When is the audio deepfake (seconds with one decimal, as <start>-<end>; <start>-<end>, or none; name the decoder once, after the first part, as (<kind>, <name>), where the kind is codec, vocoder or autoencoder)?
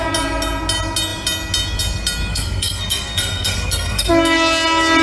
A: 2.3-4.1 (codec, SNAC)